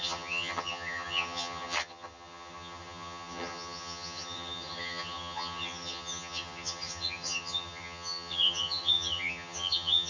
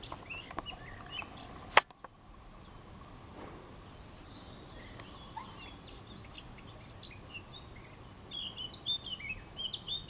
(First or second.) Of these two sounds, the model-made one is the first